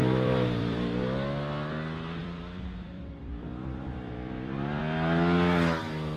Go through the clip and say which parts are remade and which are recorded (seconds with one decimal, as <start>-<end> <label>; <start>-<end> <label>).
0.0-1.0 remade; 1.0-2.2 recorded; 2.2-4.8 remade; 4.8-6.2 recorded